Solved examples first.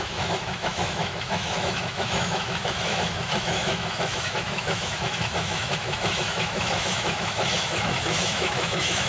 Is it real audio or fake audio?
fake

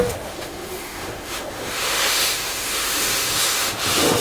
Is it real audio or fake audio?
fake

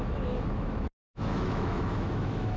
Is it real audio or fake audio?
fake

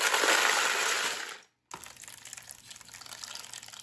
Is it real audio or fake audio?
real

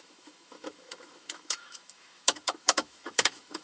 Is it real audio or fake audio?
fake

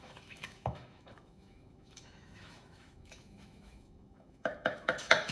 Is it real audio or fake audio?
fake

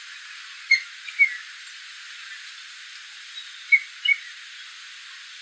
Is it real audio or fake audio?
real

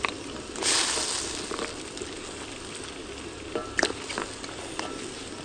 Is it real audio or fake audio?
real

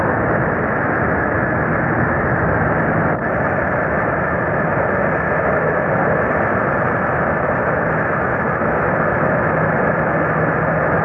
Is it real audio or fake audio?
real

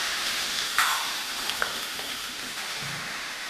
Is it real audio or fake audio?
fake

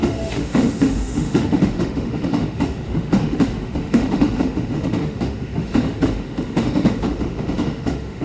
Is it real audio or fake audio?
fake